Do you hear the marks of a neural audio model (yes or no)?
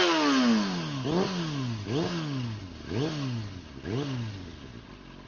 no